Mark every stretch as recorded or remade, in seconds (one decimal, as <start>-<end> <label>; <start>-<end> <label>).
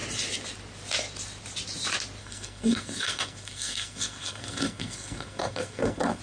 0.0-2.2 recorded; 2.2-6.2 remade